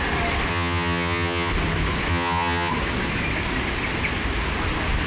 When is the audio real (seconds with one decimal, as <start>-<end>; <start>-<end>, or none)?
0.0-0.5; 1.5-2.1; 2.7-5.1